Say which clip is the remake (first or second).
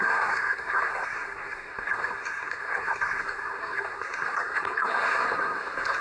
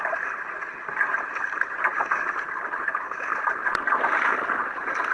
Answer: first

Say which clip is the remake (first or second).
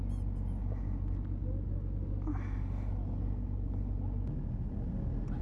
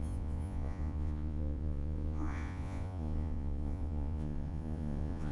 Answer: second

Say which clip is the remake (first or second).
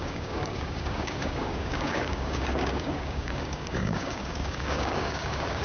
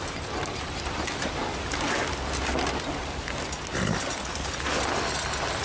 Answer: first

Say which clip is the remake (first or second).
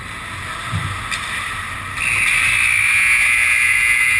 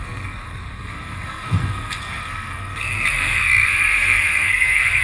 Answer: second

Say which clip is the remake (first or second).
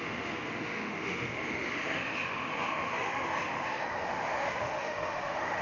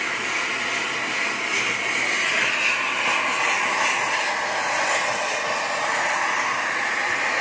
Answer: first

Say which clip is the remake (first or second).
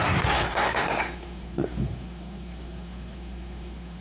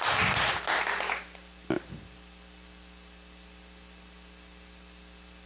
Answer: first